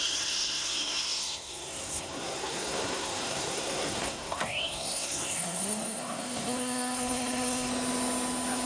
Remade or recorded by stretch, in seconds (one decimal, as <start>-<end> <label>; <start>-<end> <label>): 0.0-7.7 remade; 7.7-8.7 recorded